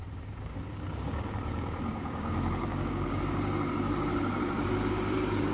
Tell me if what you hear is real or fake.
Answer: fake